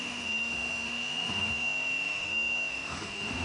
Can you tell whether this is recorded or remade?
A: remade